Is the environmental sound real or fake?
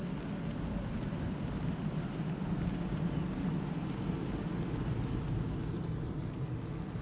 real